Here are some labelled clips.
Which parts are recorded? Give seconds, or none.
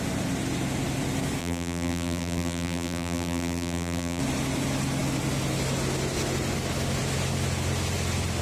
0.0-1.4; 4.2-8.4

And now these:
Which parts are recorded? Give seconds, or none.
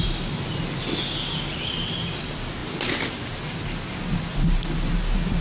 0.0-5.4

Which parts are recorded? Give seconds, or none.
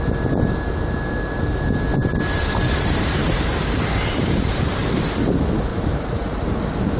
0.0-2.1; 4.8-5.7; 6.6-7.0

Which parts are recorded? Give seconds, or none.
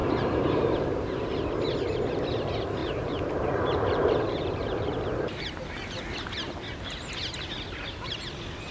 1.1-2.8; 6.0-8.7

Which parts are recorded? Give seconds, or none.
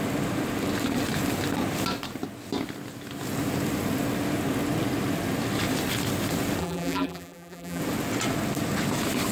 0.0-6.6; 7.8-9.3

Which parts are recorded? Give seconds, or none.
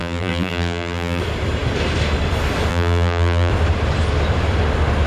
1.2-2.7; 3.5-5.1